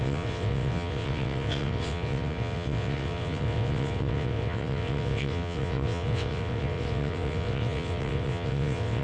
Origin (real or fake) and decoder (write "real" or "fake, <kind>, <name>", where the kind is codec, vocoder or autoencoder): fake, vocoder, WaveNeXt